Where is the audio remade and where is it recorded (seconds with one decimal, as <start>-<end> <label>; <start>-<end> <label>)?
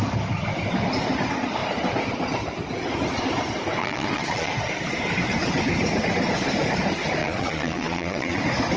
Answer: 0.0-3.8 recorded; 3.8-4.5 remade; 4.5-7.2 recorded; 7.2-8.4 remade; 8.4-8.8 recorded